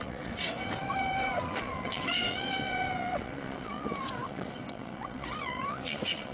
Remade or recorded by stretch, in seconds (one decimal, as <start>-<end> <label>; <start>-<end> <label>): 0.0-6.3 remade